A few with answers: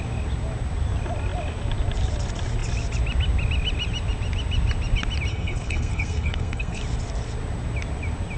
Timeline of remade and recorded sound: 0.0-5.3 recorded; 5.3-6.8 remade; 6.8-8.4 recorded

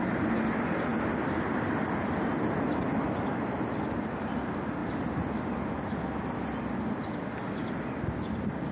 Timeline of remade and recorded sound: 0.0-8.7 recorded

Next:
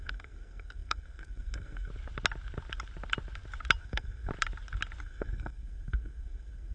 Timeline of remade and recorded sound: 0.0-1.9 remade; 1.9-3.8 recorded; 3.8-4.3 remade; 4.3-5.0 recorded; 5.0-6.7 remade

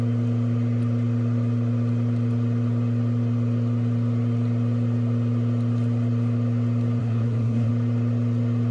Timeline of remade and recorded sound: 0.0-7.0 recorded; 7.0-7.7 remade; 7.7-8.7 recorded